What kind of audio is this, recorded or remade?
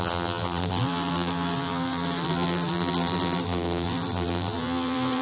remade